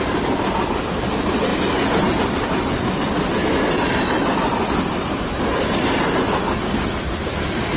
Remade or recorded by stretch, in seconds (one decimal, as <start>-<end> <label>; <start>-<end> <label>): 0.0-1.5 remade; 1.5-2.0 recorded; 2.0-7.8 remade